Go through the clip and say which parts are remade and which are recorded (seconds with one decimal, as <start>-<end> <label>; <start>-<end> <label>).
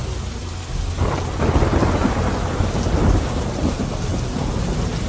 0.0-5.1 recorded